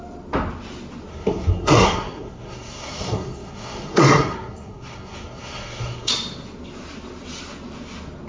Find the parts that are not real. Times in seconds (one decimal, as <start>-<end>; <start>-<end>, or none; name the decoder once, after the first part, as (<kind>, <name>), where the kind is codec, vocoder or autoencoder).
1.1-6.1 (codec, SNAC)